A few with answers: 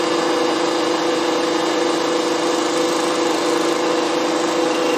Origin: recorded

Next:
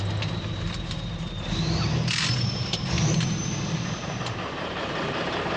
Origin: remade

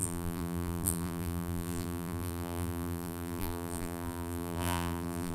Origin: remade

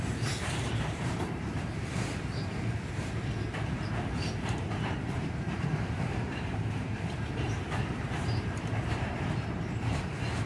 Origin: remade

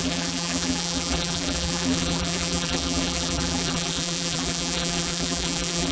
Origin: remade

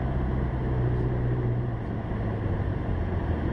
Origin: remade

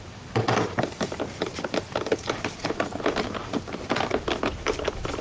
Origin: remade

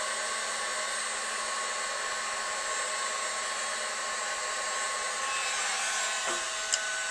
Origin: recorded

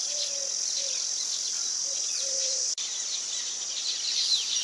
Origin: remade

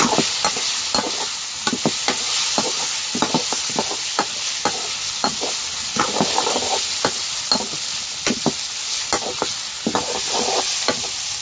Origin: recorded